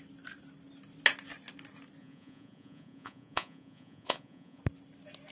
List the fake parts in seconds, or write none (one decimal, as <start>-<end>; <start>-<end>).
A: 2.0-4.6